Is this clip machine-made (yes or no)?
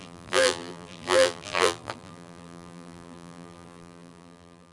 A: yes